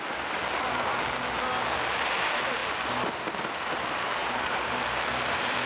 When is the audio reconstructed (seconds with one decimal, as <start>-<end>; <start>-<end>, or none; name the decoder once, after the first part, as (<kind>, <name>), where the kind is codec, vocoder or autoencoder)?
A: 4.2-4.8 (vocoder, BigVGAN v2)